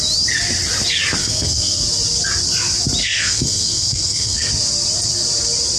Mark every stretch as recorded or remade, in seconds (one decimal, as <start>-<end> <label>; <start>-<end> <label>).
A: 0.0-1.2 recorded; 1.2-1.8 remade; 1.8-3.0 recorded; 3.0-4.5 remade; 4.5-5.8 recorded